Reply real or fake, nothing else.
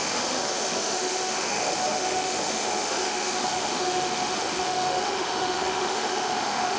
fake